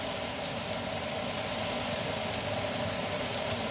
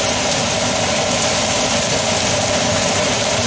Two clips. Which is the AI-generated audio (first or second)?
second